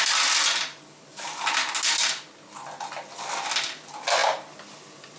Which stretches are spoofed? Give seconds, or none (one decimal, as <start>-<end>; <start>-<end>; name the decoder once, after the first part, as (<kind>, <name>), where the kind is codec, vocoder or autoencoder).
none